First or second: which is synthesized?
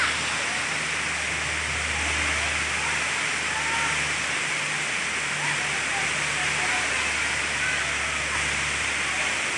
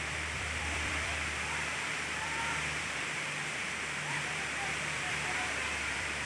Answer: second